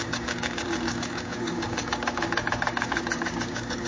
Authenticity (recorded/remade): remade